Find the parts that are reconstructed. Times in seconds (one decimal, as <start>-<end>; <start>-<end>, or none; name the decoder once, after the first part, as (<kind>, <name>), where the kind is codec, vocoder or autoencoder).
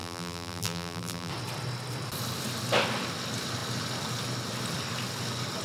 0.0-1.3 (vocoder, BigVGAN v2)